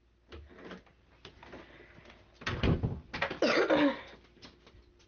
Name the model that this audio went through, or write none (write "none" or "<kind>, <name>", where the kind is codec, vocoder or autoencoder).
none